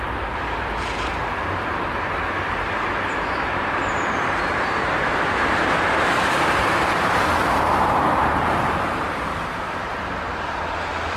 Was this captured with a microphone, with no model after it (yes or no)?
no